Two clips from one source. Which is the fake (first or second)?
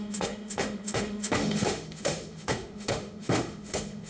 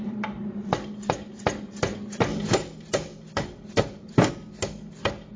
first